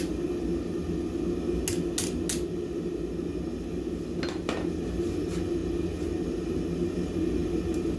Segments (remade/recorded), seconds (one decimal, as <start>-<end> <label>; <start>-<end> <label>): 0.0-8.0 recorded

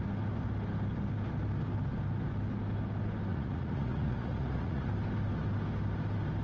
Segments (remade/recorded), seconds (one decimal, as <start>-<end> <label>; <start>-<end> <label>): 0.0-3.3 recorded; 3.3-4.9 remade; 4.9-6.4 recorded

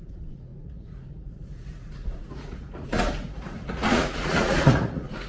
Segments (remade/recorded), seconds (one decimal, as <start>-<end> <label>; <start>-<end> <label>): 0.0-5.3 remade

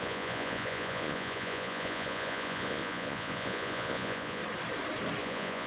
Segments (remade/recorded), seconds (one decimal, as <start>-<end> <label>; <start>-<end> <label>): 0.0-4.4 remade; 4.4-5.2 recorded; 5.2-5.7 remade

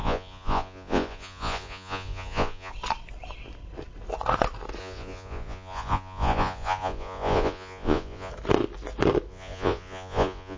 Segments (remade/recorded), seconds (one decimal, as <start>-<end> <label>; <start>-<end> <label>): 0.0-2.7 remade; 2.7-4.8 recorded; 4.8-8.3 remade; 8.3-9.3 recorded; 9.3-10.6 remade

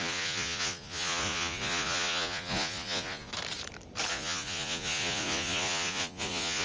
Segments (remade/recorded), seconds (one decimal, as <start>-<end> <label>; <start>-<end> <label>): 0.0-3.3 remade; 3.3-4.1 recorded; 4.1-6.6 remade

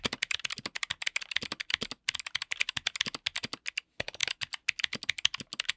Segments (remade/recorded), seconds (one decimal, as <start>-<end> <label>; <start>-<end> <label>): 0.0-5.8 recorded